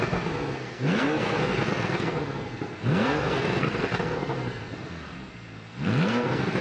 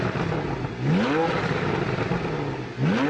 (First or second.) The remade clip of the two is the first